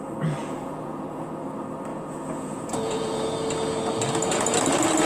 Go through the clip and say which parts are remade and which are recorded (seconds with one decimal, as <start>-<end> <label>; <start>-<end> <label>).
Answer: 0.0-0.4 recorded; 0.4-1.3 remade; 1.3-1.9 recorded; 1.9-3.2 remade; 3.2-5.0 recorded